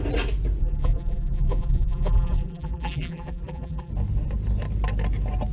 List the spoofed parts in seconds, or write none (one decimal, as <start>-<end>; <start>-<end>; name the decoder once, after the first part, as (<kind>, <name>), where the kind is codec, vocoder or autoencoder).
0.6-3.9 (vocoder, BigVGAN v2)